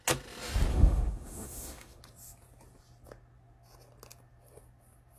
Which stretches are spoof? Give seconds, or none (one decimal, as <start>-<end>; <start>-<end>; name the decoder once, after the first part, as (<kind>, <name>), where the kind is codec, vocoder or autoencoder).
0.7-2.0 (autoencoder, DAC-VAE)